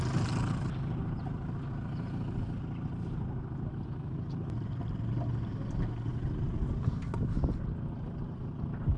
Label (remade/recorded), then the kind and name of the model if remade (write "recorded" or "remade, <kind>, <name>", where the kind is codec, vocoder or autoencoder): recorded